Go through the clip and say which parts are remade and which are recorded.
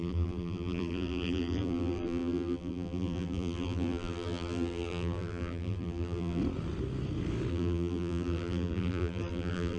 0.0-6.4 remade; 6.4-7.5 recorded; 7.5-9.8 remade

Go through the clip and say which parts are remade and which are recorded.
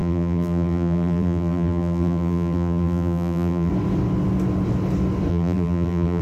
0.0-3.7 remade; 3.7-5.3 recorded; 5.3-6.2 remade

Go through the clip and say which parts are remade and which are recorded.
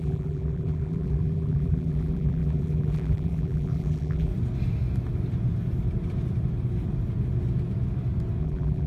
0.0-4.3 remade; 4.3-8.4 recorded; 8.4-8.9 remade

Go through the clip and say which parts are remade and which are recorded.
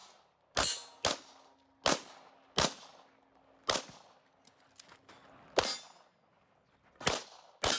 0.0-7.8 recorded